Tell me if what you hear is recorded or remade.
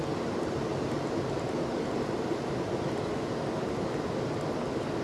recorded